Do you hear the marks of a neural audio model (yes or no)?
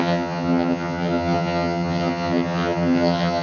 yes